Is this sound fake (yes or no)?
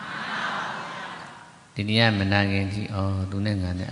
no